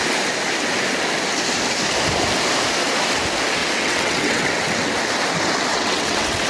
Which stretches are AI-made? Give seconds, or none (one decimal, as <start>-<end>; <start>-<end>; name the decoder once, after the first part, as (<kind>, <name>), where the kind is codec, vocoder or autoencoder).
3.6-4.9 (vocoder, WaveNeXt); 5.7-6.5